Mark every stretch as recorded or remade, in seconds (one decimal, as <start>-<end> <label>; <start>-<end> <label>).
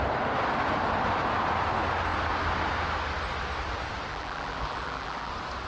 0.0-4.1 recorded; 4.1-5.3 remade; 5.3-5.7 recorded